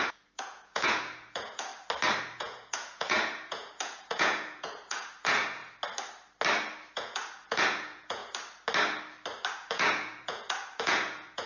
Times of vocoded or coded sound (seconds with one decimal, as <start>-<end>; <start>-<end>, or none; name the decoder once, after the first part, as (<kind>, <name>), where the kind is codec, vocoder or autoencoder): 0.0-1.7 (vocoder, Vocos); 2.2-5.6; 6.9-8.2; 9.5-11.5